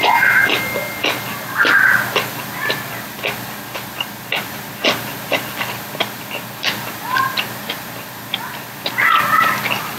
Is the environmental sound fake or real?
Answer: real